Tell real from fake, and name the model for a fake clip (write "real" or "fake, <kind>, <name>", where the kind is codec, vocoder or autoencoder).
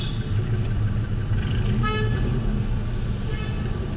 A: real